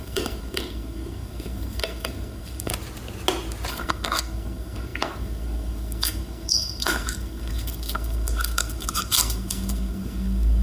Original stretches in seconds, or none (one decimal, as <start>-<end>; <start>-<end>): 2.7-3.7